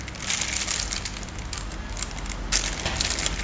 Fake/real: real